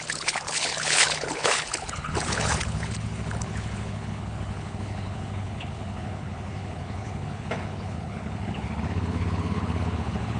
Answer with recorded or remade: remade